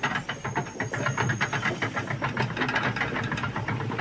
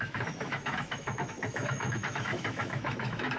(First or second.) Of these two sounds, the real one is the first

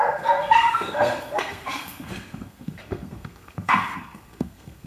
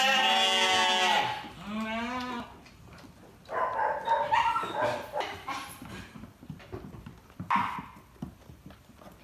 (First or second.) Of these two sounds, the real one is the second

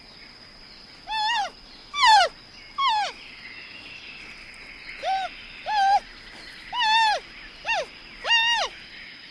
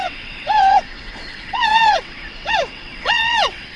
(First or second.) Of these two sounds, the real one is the first